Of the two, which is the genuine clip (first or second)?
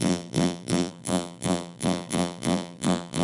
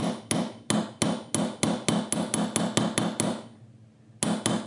second